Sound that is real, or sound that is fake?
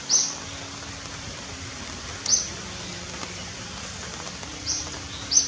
fake